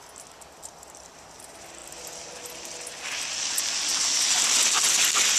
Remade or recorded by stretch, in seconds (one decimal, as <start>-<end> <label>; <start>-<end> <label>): 0.0-5.4 recorded

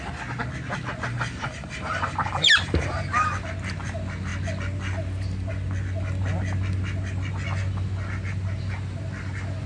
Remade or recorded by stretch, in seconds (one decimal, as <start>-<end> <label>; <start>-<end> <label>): 0.0-1.1 recorded; 1.1-3.1 remade; 3.1-9.7 recorded

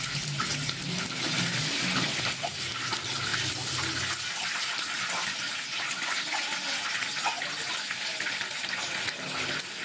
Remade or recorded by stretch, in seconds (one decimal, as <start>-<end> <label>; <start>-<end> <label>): 0.0-9.8 recorded